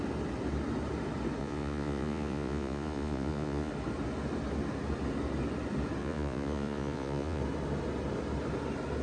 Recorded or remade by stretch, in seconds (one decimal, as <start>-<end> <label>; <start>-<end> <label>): 0.0-1.4 recorded; 1.4-3.7 remade; 3.7-6.0 recorded; 6.0-7.4 remade; 7.4-9.0 recorded